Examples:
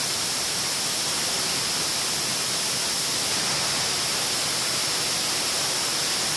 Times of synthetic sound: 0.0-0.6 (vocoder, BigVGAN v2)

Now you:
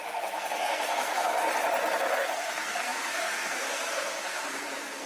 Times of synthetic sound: 0.0-1.5 (codec, SNAC); 2.1-5.1

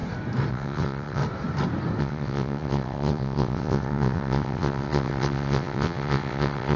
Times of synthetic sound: 0.5-1.2 (vocoder, WaveNeXt); 2.0-6.8

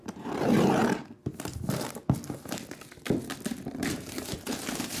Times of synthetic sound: 0.0-0.8 (vocoder, BigVGAN v2); 3.8-5.0

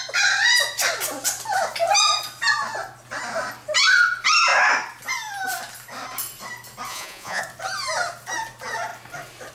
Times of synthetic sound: 6.9-7.4 (vocoder, Vocos)

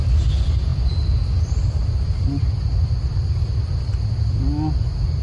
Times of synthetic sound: none

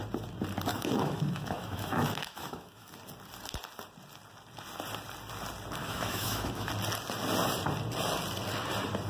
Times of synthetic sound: 0.7-2.9 (autoencoder, DAC-VAE); 5.8-6.7

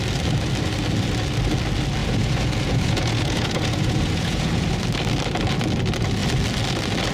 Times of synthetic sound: 2.0-4.8 (vocoder, Vocos)